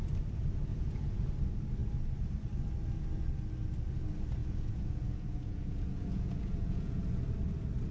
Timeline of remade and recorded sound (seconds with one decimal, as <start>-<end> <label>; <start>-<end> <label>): 0.0-0.7 recorded; 0.7-1.3 remade; 1.3-4.4 recorded; 4.4-7.0 remade; 7.0-7.9 recorded